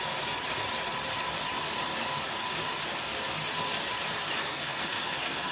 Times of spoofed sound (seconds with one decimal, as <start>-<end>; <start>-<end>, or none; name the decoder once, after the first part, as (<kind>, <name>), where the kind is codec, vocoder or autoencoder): 4.4-5.5 (codec, SNAC)